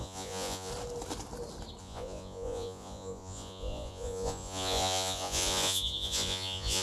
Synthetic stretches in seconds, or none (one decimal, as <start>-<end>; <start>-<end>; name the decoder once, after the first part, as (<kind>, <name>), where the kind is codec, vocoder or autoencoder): 0.0-0.7 (vocoder, Vocos); 1.8-6.8